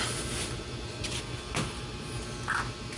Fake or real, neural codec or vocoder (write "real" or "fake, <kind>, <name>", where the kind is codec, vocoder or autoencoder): real